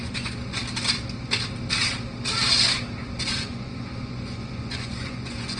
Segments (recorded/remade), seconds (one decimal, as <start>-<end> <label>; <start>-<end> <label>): 0.0-0.6 remade; 0.6-3.4 recorded; 3.4-5.6 remade